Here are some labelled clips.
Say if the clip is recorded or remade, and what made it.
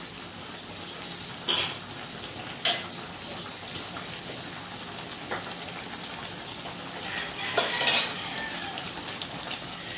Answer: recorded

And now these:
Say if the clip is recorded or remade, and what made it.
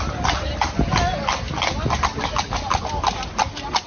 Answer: recorded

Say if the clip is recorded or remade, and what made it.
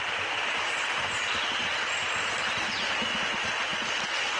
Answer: recorded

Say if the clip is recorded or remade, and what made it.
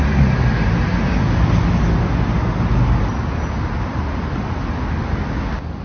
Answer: recorded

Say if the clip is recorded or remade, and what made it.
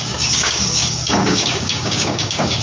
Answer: remade, codec, DAC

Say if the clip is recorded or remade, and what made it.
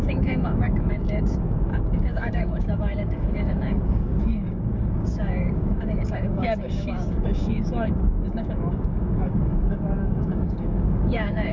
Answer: remade, codec, DAC